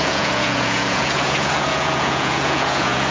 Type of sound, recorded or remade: remade